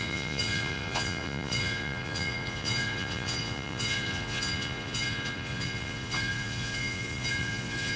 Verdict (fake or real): fake